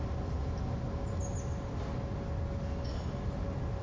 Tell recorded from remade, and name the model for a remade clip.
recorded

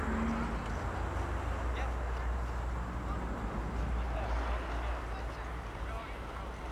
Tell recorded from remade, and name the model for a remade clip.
recorded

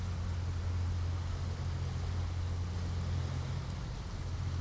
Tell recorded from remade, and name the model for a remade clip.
recorded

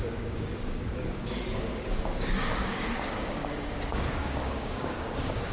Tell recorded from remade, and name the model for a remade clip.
remade, codec, DAC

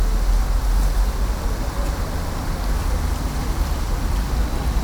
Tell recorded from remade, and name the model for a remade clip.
recorded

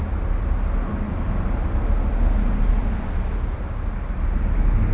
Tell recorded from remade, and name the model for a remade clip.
recorded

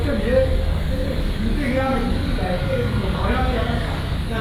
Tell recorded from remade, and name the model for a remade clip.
remade, codec, DAC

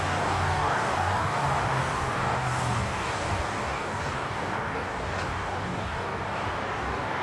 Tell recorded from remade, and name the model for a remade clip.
remade, codec, DAC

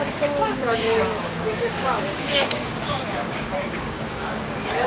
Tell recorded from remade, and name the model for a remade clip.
remade, codec, DAC